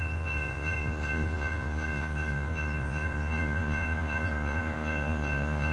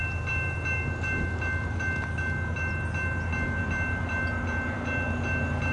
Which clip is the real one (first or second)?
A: second